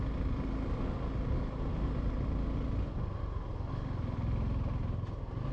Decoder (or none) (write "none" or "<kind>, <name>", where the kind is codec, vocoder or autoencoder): none